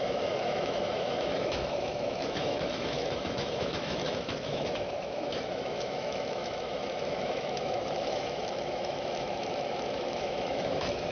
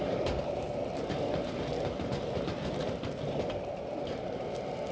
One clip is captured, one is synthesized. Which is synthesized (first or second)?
first